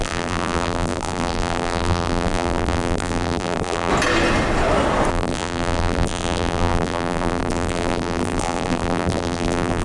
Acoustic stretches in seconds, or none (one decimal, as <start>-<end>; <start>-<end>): 3.9-5.1

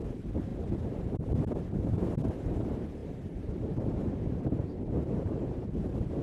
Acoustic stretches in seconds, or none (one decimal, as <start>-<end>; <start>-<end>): none